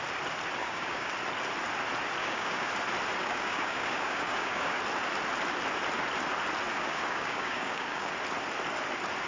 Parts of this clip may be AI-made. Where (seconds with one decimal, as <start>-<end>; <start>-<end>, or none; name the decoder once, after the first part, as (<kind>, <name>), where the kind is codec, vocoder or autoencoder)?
0.6-1.1 (codec, DAC); 2.2-2.7; 3.2-4.8; 6.7-8.1